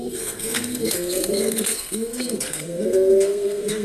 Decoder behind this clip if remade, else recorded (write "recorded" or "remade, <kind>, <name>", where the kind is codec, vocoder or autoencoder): remade, codec, SNAC